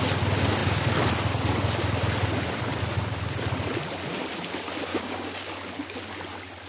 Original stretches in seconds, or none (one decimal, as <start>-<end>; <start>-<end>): 0.0-4.9; 5.5-6.7